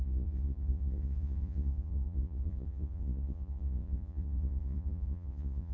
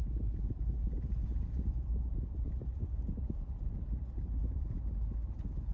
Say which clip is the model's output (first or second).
first